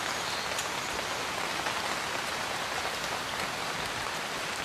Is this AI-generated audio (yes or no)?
no